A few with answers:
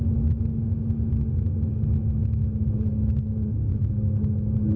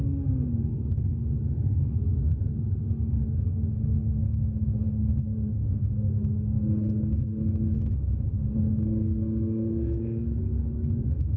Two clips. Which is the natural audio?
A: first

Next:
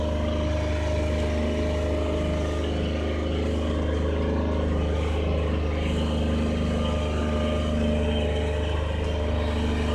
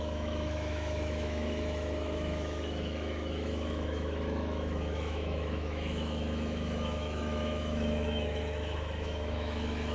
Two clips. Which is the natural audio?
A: first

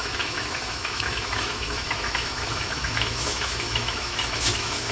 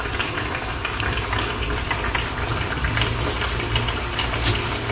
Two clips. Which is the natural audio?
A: second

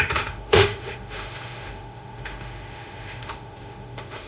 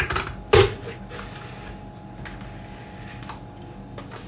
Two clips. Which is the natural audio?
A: second